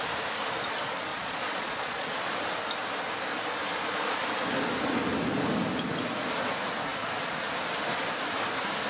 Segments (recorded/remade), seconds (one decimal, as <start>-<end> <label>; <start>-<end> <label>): 0.0-1.1 recorded; 1.1-2.3 remade; 2.3-8.9 recorded